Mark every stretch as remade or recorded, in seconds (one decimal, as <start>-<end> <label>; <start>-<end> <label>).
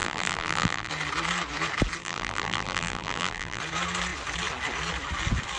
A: 0.0-0.9 remade; 0.9-2.0 recorded; 2.0-3.6 remade; 3.6-5.6 recorded